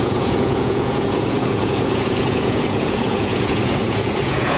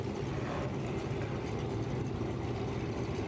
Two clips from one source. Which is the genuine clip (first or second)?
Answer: second